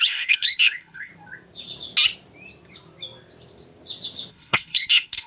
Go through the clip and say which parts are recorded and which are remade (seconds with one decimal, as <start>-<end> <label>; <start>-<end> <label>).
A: 0.0-1.1 remade; 1.1-4.3 recorded; 4.3-5.3 remade